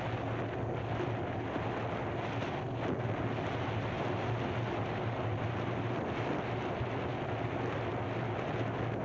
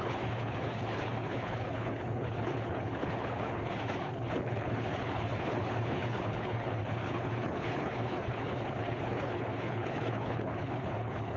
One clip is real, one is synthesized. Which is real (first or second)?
first